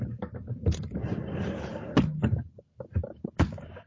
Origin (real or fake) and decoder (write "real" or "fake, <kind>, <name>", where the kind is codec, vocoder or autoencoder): real